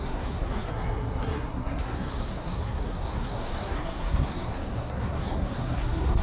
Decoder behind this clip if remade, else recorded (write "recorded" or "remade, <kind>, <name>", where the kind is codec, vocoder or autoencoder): remade, codec, SNAC